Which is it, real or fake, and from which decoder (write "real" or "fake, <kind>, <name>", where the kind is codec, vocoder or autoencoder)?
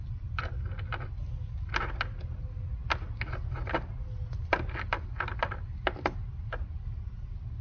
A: real